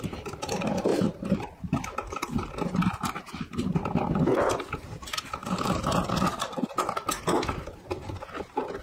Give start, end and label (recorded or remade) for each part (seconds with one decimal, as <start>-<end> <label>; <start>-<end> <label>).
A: 0.0-0.9 recorded; 0.9-3.2 remade; 3.2-5.4 recorded; 5.4-6.1 remade; 6.1-8.8 recorded